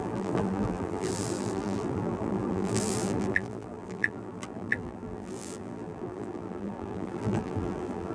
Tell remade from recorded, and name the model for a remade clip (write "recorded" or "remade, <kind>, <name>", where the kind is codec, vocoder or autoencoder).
remade, vocoder, BigVGAN v2